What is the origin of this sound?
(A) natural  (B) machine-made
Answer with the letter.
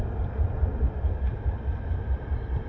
A